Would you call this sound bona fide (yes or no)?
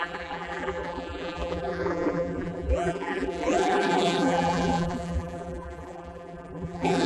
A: no